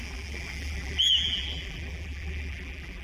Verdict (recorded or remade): remade